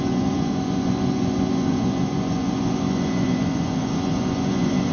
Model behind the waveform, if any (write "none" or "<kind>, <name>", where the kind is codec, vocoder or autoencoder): vocoder, Vocos